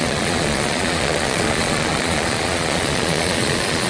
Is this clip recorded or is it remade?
remade